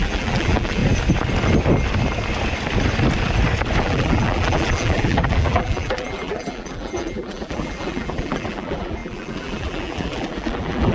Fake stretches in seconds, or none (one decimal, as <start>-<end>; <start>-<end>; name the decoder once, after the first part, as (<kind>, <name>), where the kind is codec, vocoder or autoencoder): 0.0-0.8 (vocoder, BigVGAN v2); 3.8-10.9